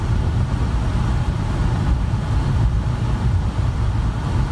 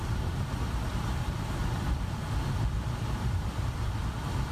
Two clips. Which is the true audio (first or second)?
first